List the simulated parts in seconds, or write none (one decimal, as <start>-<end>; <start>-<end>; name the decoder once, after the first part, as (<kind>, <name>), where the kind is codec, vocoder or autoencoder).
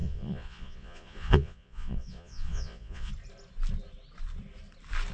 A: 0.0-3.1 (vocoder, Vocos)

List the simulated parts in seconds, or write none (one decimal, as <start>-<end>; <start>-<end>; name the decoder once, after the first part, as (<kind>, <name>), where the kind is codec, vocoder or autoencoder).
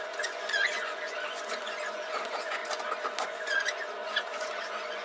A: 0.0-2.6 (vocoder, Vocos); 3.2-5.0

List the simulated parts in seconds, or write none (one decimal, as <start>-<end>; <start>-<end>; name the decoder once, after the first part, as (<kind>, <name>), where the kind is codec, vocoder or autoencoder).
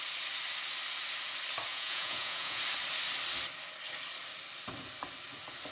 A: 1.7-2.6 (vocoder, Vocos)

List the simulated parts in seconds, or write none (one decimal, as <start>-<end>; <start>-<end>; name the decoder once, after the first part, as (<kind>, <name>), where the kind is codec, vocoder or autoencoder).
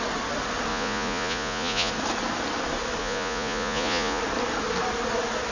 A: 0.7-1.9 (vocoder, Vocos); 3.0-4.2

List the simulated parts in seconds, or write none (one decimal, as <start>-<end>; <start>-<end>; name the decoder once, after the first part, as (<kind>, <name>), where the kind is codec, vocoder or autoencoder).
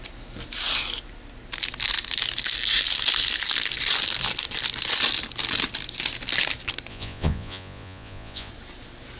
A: 6.9-8.5 (vocoder, Vocos)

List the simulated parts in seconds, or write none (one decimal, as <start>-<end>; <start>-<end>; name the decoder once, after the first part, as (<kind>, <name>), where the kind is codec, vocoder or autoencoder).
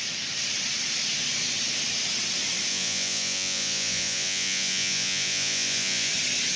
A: 2.7-6.1 (vocoder, Vocos)